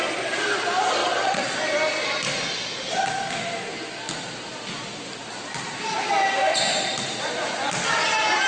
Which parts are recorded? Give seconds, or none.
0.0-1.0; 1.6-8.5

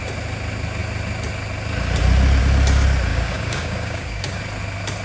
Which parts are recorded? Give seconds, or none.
0.0-3.1; 4.4-5.0